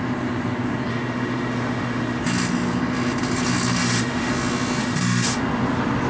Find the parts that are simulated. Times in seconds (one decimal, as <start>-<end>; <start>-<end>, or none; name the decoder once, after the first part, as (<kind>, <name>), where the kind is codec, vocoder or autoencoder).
0.9-2.2 (autoencoder, DAC-VAE); 3.8-4.3; 4.8-5.4